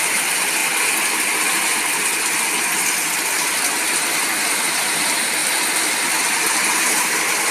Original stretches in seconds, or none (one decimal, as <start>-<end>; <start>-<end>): 0.6-4.5; 5.4-6.8